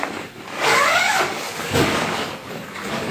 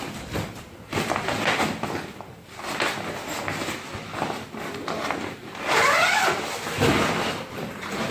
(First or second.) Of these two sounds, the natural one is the second